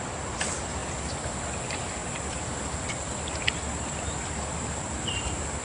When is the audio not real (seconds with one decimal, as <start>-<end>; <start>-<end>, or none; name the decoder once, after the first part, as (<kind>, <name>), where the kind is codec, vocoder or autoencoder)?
0.8-1.6 (vocoder, BigVGAN v2); 2.0-5.1